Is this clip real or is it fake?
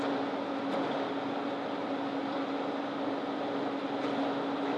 real